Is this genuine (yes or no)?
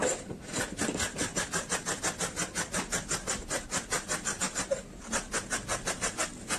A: yes